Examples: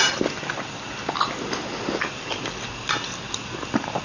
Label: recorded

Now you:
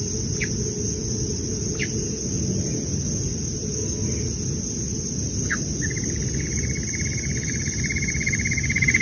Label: recorded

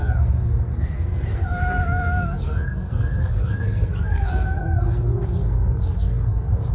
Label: remade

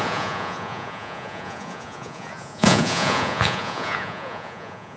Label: remade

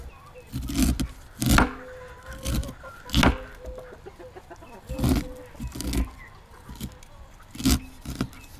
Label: recorded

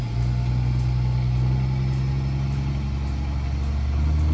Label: recorded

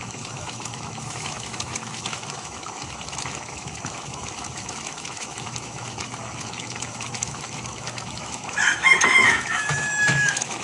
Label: remade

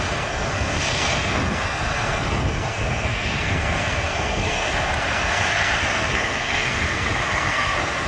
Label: remade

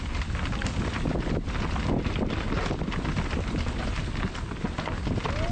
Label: recorded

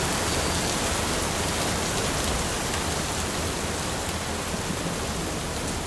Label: recorded